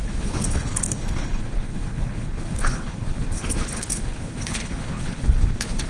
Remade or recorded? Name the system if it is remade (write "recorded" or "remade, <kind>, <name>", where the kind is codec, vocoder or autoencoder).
remade, codec, HILCodec